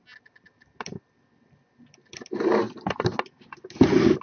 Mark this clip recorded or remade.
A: recorded